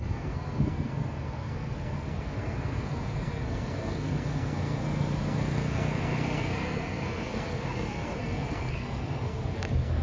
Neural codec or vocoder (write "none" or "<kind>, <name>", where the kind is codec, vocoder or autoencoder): codec, SNAC